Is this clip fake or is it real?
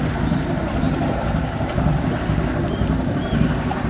fake